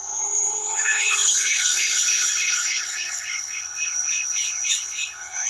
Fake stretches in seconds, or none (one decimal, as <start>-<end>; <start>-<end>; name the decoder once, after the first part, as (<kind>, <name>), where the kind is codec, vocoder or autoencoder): 0.0-5.5 (codec, HILCodec)